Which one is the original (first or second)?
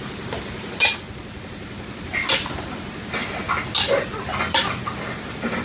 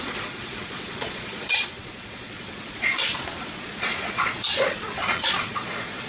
first